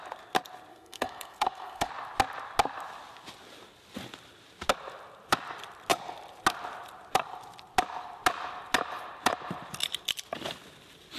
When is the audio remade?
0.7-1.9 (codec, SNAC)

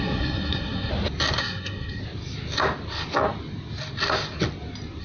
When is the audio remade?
0.0-0.9 (codec, SNAC); 1.4-2.0

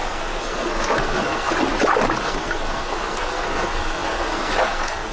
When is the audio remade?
0.0-1.5 (codec, SNAC); 2.2-5.1

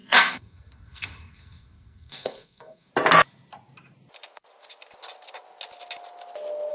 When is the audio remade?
0.0-2.9 (codec, SNAC)